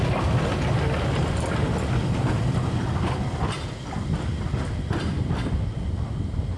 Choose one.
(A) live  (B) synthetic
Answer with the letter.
A